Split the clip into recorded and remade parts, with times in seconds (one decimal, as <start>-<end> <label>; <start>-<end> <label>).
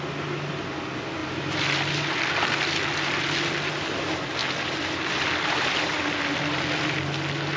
0.0-7.6 recorded